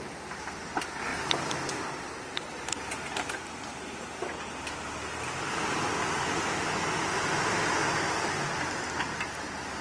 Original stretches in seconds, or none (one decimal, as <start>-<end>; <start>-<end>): 0.0-1.1; 4.2-9.8